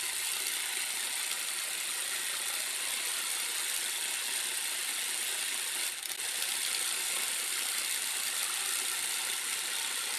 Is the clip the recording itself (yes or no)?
yes